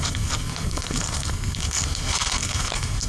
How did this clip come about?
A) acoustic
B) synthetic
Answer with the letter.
B